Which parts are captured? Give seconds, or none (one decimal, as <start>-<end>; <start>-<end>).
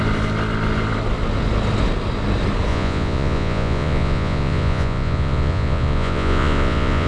0.0-2.7